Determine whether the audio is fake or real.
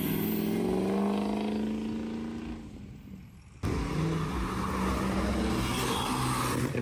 real